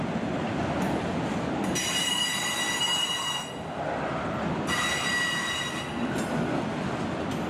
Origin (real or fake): real